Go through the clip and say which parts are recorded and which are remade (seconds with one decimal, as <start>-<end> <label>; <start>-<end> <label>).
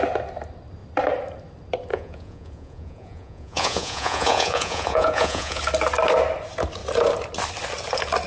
0.0-1.9 recorded; 1.9-5.6 remade; 5.6-8.3 recorded